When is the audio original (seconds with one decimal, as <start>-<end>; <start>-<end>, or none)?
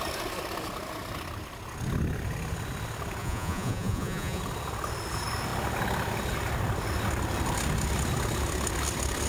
0.0-3.2; 4.4-9.3